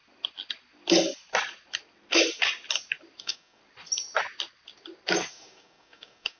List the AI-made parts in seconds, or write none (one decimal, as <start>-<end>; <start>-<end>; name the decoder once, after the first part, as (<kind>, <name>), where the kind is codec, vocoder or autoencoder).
3.2-3.6 (codec, DAC); 5.3-6.4